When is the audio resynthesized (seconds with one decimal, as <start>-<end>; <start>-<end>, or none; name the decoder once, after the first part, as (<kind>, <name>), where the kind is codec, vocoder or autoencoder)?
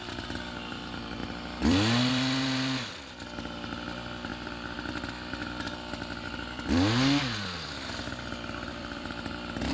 0.0-9.7 (vocoder, BigVGAN v2)